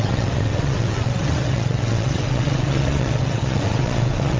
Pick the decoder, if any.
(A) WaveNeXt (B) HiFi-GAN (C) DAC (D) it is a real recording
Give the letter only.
A